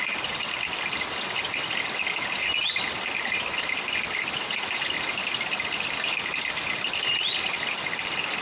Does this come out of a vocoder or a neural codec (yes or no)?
yes